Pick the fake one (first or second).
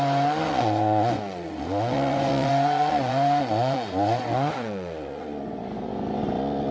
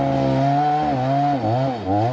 first